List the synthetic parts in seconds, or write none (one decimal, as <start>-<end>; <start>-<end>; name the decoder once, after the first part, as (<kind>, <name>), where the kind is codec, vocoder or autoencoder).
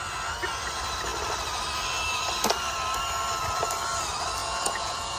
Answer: 4.4-5.2 (vocoder, Vocos)